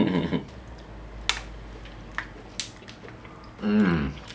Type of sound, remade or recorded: recorded